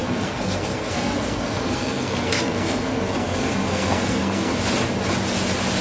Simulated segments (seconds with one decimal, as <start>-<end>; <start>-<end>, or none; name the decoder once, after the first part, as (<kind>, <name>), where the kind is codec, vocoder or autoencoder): 0.0-4.5 (codec, SNAC)